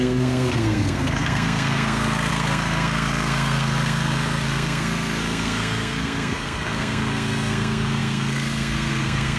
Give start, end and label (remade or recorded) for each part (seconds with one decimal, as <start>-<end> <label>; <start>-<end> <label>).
0.0-9.4 remade